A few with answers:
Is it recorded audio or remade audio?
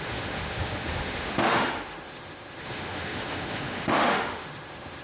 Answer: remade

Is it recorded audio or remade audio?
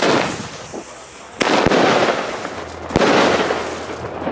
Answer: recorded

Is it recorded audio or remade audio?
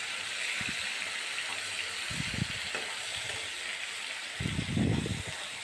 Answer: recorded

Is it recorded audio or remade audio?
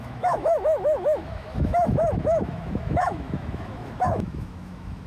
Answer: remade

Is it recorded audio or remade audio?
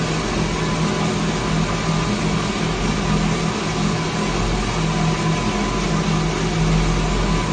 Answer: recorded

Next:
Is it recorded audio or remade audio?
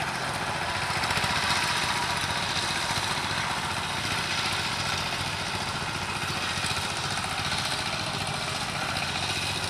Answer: recorded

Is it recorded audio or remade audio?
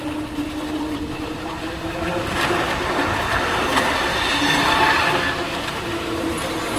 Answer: recorded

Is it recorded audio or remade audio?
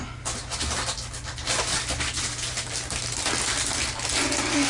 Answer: recorded